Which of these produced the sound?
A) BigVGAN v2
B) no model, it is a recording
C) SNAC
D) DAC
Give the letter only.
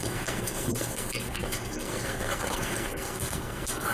C